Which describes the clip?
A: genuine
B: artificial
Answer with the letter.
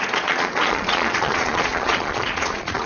B